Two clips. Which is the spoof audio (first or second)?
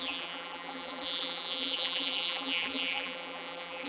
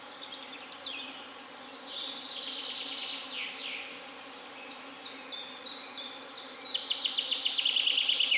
first